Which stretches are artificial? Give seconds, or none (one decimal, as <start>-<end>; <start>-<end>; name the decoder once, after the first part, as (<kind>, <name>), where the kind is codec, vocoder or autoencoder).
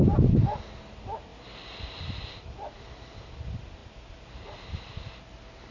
none